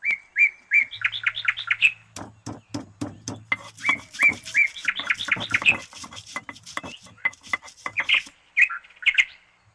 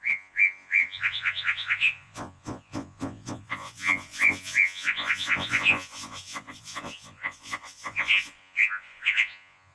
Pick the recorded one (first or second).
first